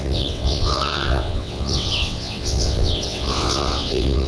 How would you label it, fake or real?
fake